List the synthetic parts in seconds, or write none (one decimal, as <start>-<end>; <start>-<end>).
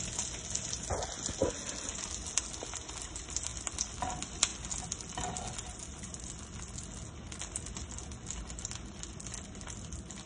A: none